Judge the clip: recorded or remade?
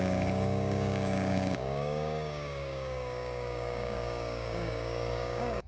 remade